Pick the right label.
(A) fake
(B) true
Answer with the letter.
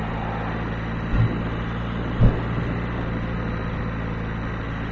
B